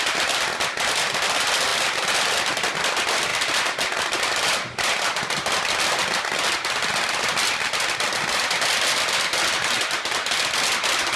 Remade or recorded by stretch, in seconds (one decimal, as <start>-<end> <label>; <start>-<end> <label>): 0.0-11.2 recorded